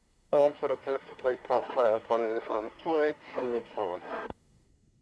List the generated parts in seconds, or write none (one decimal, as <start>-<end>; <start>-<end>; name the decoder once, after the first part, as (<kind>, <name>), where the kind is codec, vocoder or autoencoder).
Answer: 0.0-5.0 (codec, SNAC)